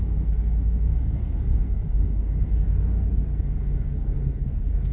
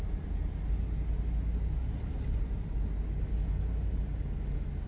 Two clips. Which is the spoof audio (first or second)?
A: first